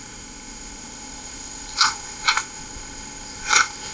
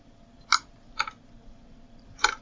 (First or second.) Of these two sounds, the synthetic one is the first